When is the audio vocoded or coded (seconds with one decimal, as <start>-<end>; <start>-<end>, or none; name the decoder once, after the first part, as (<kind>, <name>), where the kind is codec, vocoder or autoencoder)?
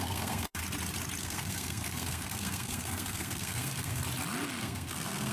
0.0-0.6 (codec, SNAC); 1.2-4.0; 4.6-5.3